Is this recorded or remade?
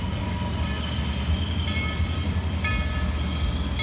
recorded